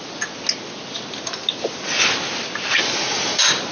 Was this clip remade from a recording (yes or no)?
no